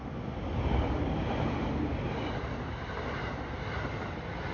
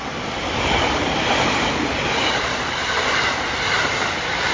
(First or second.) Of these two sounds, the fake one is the second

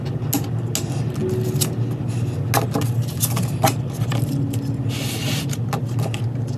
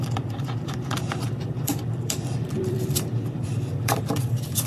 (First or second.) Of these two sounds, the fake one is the second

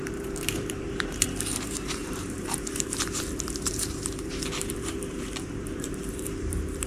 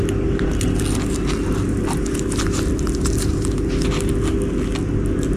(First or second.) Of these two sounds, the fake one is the first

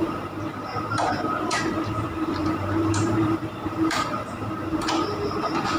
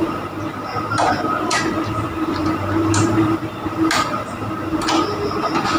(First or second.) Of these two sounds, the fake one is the first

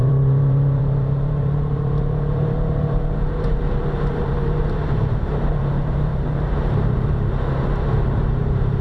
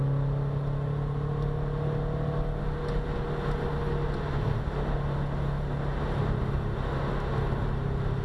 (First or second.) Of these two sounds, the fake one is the first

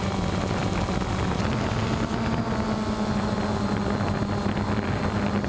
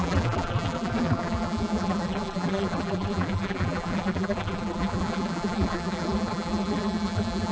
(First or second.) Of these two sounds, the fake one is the second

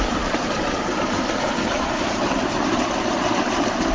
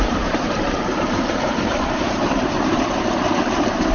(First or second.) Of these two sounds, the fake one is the second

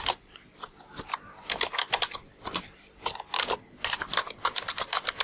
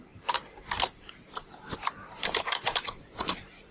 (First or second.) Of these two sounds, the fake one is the second